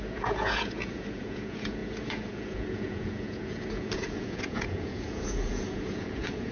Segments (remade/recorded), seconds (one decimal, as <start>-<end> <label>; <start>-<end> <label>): 0.0-6.5 remade

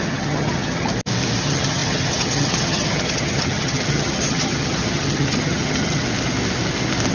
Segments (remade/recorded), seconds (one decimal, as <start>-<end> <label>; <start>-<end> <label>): 0.0-0.9 remade; 0.9-1.4 recorded; 1.4-6.0 remade; 6.0-7.1 recorded